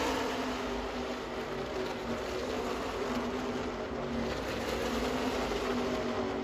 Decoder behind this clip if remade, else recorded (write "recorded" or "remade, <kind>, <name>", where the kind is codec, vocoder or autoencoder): recorded